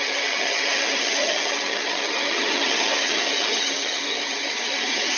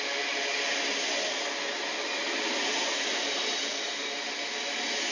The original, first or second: second